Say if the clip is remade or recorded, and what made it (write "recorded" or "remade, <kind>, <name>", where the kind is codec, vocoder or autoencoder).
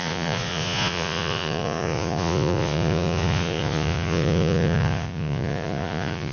remade, vocoder, Vocos